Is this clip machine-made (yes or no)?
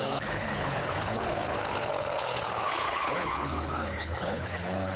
yes